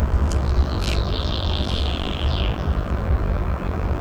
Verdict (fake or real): fake